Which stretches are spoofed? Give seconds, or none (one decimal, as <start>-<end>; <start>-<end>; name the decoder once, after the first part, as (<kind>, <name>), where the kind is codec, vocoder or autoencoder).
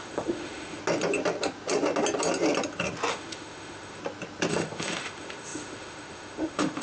0.0-0.8 (autoencoder, DAC-VAE); 3.1-4.0; 4.5-6.8